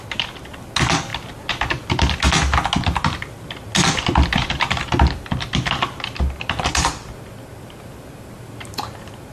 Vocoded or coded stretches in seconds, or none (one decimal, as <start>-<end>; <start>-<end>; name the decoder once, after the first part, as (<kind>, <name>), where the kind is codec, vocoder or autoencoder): none